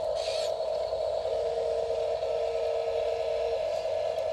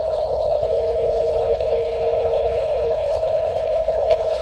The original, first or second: first